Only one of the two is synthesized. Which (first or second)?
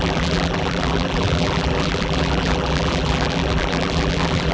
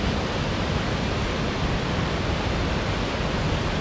first